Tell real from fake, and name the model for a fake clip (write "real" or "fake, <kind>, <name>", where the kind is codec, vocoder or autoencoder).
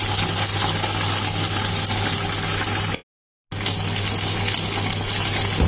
real